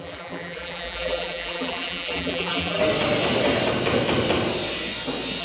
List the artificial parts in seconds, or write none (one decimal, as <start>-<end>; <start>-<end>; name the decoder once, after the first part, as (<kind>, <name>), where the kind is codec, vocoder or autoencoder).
0.0-2.8 (vocoder, BigVGAN v2)